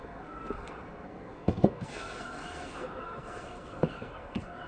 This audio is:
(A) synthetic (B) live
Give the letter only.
A